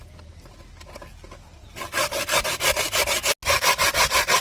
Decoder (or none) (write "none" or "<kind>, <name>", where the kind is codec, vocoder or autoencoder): none